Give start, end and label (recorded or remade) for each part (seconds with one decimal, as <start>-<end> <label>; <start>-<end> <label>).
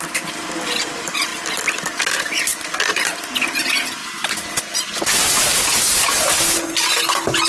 0.0-7.5 recorded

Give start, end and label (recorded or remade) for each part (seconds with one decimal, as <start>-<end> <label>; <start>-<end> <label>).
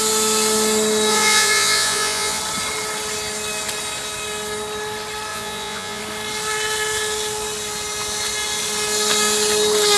0.0-1.1 recorded; 1.1-2.4 remade; 2.4-5.3 recorded; 5.3-6.0 remade; 6.0-10.0 recorded